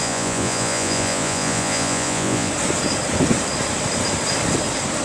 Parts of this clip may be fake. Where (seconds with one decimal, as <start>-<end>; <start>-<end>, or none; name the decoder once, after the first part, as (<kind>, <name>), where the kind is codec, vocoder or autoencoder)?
0.0-2.5 (vocoder, Vocos)